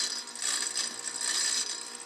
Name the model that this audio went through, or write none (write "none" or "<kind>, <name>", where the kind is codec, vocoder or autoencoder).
none